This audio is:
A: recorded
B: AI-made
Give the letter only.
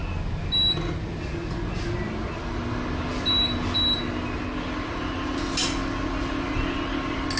A